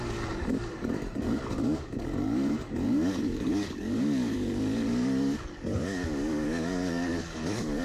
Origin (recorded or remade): remade